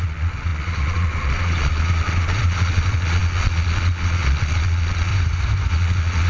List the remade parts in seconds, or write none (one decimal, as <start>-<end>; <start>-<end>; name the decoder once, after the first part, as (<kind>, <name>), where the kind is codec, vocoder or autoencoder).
0.0-5.1 (vocoder, Vocos); 5.7-6.3